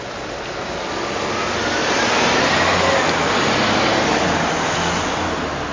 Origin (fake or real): real